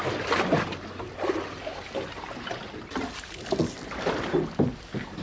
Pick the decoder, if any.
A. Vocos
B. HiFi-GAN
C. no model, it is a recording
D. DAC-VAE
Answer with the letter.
C